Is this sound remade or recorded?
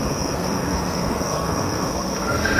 remade